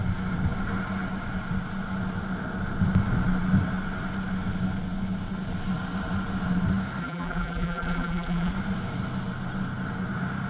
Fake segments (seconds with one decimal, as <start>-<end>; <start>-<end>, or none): 7.0-8.5